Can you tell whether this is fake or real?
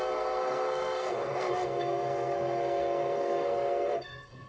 fake